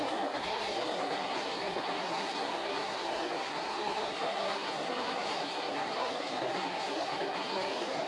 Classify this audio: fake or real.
fake